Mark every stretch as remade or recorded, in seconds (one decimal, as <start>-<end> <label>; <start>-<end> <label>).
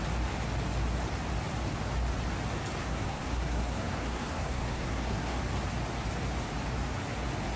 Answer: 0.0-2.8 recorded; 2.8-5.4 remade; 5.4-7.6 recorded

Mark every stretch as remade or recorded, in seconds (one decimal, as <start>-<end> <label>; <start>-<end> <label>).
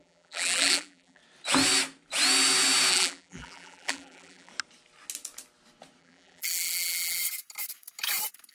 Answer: 0.0-1.2 remade; 1.2-2.9 recorded; 2.9-4.5 remade; 4.5-6.0 recorded; 6.0-7.2 remade; 7.2-8.5 recorded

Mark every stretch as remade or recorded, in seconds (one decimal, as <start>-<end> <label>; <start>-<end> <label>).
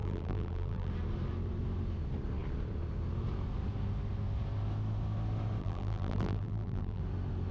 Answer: 0.0-0.9 remade; 0.9-5.6 recorded; 5.6-7.0 remade; 7.0-7.5 recorded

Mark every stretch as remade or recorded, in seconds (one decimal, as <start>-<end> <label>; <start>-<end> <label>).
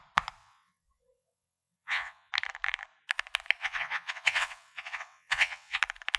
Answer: 0.0-0.4 recorded; 0.4-2.3 remade; 2.3-3.6 recorded; 3.6-5.8 remade; 5.8-6.2 recorded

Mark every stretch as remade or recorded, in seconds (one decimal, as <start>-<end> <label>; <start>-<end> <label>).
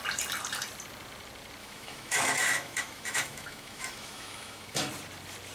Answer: 0.0-1.6 recorded; 1.6-4.9 remade; 4.9-5.5 recorded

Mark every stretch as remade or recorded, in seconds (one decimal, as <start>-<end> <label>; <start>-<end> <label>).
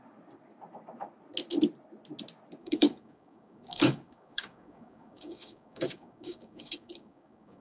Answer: 0.0-2.6 recorded; 2.6-7.6 remade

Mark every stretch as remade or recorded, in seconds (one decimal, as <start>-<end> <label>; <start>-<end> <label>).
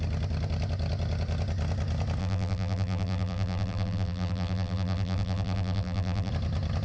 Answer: 0.0-2.2 recorded; 2.2-6.3 remade; 6.3-6.8 recorded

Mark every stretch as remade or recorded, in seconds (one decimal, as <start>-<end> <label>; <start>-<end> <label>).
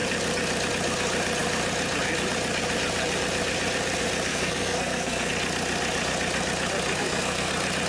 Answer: 0.0-4.3 recorded; 4.3-5.3 remade; 5.3-7.0 recorded; 7.0-7.5 remade; 7.5-7.9 recorded